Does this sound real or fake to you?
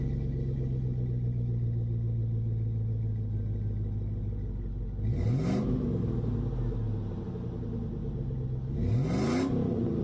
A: real